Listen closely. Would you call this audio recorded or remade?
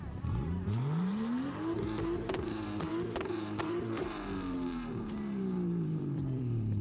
remade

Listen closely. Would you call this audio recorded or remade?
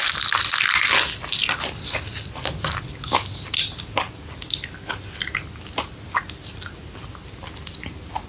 recorded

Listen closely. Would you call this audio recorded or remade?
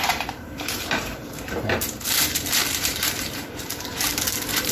remade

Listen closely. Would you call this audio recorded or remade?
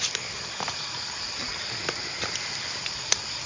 remade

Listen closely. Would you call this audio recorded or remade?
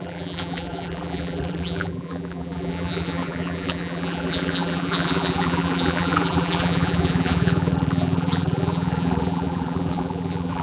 remade